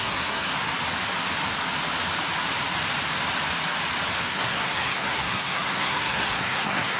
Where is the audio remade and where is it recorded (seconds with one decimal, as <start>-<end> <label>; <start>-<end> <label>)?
0.0-0.5 remade; 0.5-4.2 recorded; 4.2-7.0 remade